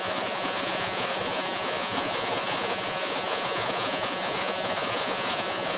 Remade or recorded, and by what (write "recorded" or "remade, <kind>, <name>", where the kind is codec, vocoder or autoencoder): remade, vocoder, Vocos